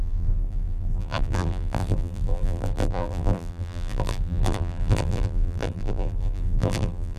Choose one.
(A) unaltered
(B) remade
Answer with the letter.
B